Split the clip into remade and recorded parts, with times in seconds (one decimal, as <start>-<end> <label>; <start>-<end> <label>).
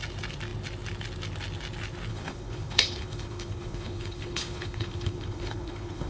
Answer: 0.0-2.1 recorded; 2.1-6.1 remade